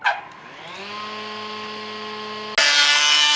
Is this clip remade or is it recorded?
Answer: recorded